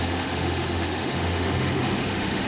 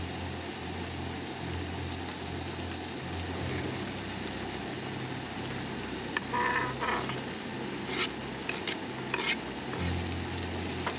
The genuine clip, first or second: second